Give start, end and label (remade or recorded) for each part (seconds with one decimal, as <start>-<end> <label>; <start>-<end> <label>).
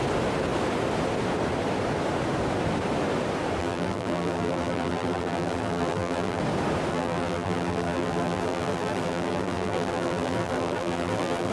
0.0-3.6 recorded; 3.6-6.4 remade; 6.4-6.9 recorded; 6.9-11.5 remade